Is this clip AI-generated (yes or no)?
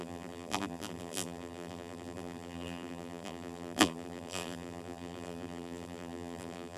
yes